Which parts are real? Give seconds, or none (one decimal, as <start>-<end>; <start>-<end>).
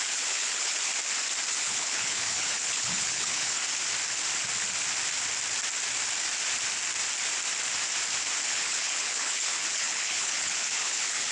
0.9-1.5; 3.6-8.5